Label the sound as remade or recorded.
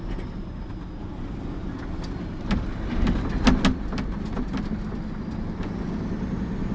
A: recorded